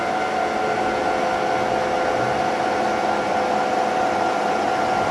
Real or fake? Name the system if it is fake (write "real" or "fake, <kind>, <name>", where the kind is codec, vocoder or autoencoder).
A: real